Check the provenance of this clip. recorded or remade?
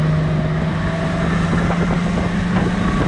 recorded